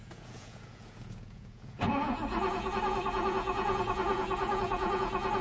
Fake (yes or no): yes